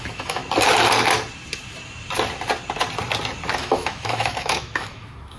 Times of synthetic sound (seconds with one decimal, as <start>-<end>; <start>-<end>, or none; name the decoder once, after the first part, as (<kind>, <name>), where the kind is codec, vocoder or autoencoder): 0.0-0.4 (autoencoder, DAC-VAE); 3.6-5.4